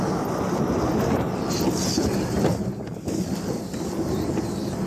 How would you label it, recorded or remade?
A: recorded